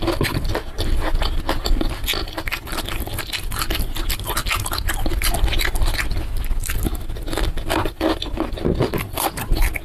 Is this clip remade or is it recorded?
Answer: recorded